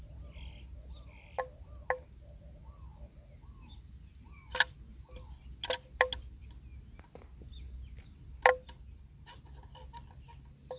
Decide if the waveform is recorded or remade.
recorded